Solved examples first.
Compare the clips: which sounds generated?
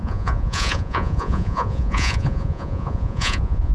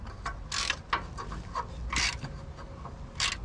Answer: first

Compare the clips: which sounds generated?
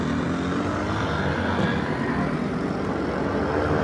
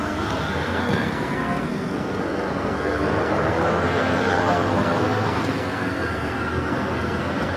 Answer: second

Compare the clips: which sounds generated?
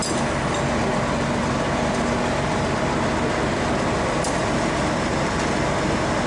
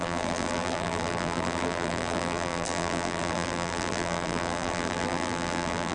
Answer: second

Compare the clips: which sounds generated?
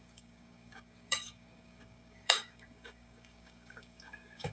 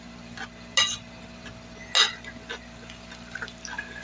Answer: first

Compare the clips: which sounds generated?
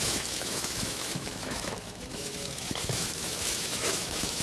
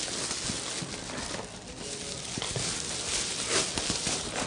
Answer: first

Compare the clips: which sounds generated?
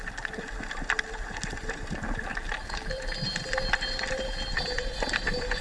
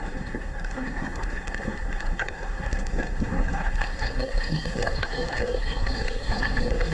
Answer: second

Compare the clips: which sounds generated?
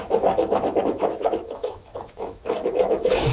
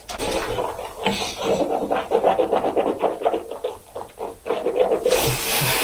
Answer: first